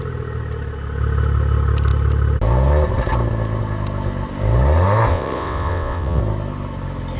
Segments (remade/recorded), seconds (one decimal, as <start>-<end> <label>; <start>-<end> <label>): 0.0-5.1 recorded; 5.1-6.2 remade; 6.2-7.2 recorded